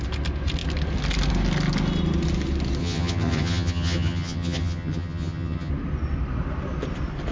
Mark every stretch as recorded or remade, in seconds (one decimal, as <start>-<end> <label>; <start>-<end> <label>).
0.0-2.8 recorded; 2.8-5.7 remade; 5.7-7.3 recorded

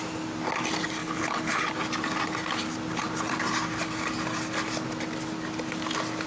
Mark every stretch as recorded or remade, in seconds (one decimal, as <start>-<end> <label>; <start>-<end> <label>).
0.0-1.0 recorded; 1.0-1.7 remade; 1.7-6.3 recorded

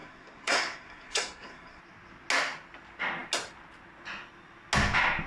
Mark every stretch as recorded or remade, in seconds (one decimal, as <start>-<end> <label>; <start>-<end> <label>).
0.0-1.8 remade; 1.8-5.3 recorded

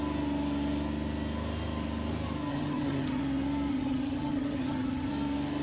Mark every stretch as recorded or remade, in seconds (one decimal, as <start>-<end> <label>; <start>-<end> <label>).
0.0-2.5 recorded; 2.5-3.2 remade; 3.2-3.7 recorded; 3.7-5.1 remade; 5.1-5.6 recorded

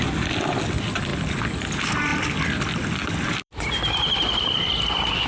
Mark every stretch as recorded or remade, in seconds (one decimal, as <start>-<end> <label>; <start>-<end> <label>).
0.0-5.3 recorded

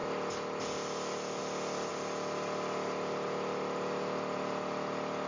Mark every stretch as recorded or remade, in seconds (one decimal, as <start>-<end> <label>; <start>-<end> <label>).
0.0-5.3 recorded